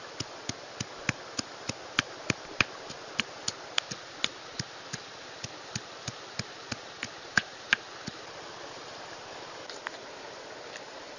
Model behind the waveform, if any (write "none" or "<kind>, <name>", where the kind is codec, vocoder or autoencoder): none